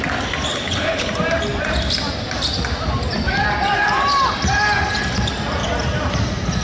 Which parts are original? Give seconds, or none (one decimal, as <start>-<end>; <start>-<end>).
0.0-0.5; 1.1-6.6